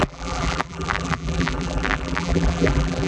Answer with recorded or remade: remade